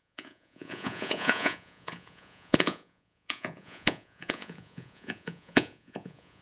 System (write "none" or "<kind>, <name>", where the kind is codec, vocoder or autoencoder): vocoder, Vocos